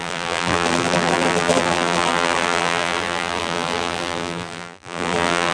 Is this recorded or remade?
remade